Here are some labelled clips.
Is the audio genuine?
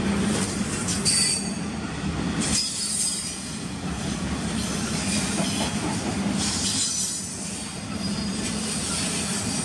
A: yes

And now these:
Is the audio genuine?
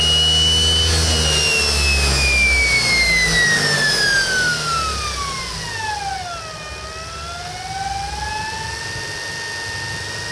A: yes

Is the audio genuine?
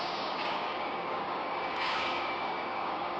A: no